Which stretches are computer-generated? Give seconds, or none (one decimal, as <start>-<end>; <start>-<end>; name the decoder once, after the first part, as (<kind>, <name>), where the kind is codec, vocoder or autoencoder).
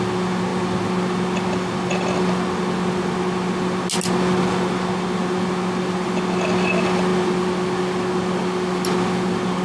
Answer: none